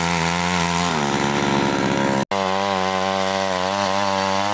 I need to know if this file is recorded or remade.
recorded